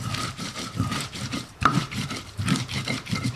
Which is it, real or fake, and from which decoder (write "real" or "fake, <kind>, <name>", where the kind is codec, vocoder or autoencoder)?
fake, vocoder, BigVGAN v2